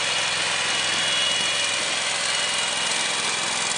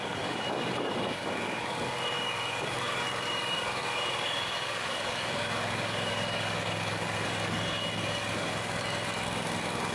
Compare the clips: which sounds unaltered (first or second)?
first